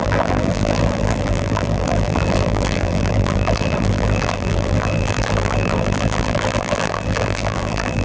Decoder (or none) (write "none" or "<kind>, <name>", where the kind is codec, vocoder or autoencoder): vocoder, BigVGAN v2